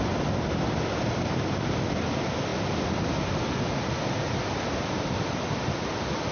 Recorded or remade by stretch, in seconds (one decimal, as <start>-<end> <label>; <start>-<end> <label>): 0.0-6.3 recorded